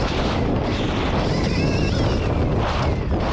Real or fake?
real